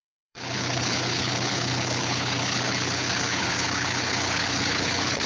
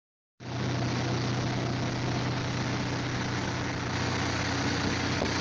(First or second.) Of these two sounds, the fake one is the first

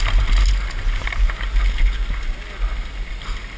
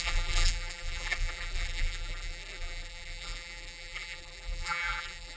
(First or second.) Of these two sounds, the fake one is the second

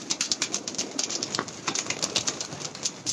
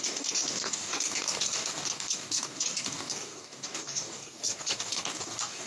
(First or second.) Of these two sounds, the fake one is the second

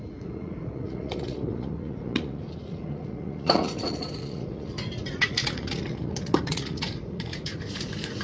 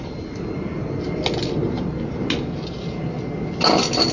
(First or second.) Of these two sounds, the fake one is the first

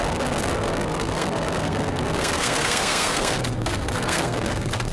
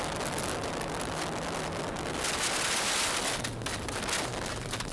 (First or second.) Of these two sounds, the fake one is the first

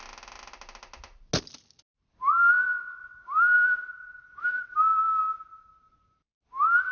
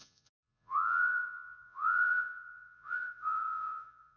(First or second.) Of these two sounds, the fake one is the second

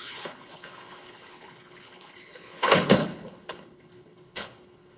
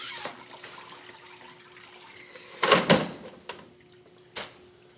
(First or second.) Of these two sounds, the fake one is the first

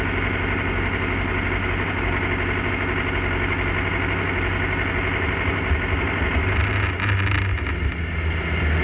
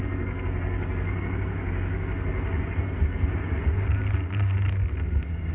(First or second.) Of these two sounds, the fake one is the second